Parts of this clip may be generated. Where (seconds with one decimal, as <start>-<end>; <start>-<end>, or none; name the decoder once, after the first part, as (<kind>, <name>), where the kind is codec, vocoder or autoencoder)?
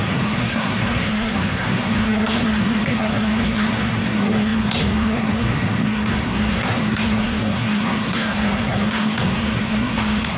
0.0-10.4 (codec, SNAC)